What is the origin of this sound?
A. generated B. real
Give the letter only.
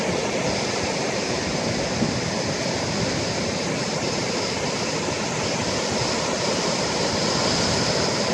B